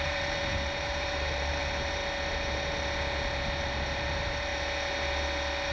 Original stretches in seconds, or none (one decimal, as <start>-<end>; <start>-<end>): 2.0-3.6; 4.5-5.7